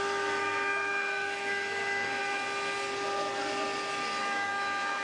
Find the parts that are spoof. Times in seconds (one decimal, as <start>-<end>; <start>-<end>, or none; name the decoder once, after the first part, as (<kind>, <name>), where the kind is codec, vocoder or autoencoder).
0.0-2.2 (autoencoder, DAC-VAE); 4.2-5.0